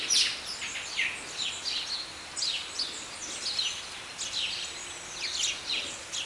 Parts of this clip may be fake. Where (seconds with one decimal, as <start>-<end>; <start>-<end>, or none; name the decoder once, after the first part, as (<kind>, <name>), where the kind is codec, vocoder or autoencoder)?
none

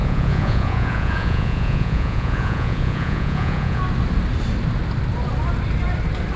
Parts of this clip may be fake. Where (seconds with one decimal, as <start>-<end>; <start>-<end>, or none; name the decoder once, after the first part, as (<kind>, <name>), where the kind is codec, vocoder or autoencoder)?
0.0-3.8 (vocoder, Vocos)

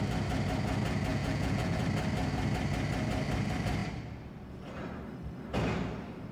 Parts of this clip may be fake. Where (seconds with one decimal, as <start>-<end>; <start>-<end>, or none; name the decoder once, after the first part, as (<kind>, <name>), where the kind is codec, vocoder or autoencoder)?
1.1-1.8 (vocoder, Vocos)

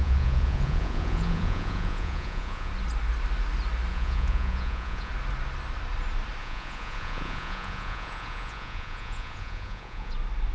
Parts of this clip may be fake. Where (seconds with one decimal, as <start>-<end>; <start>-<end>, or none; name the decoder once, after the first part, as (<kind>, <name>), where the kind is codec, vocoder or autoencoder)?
0.0-2.7 (vocoder, Vocos); 3.9-5.1; 6.4-10.1

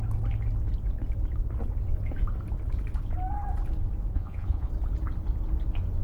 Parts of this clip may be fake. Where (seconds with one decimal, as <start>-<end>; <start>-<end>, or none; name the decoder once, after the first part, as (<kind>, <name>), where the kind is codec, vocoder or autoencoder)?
4.1-4.7 (vocoder, Vocos)

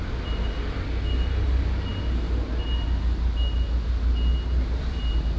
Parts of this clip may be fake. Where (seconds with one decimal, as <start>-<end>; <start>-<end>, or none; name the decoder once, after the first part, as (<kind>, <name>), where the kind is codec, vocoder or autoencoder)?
none

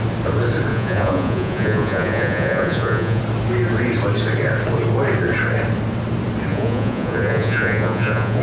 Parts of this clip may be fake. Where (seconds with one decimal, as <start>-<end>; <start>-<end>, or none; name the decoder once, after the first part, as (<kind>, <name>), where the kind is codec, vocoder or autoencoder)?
0.7-3.2 (vocoder, Vocos); 6.5-8.4